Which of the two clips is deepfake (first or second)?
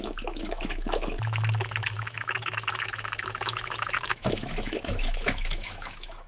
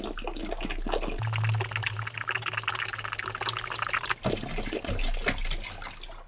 first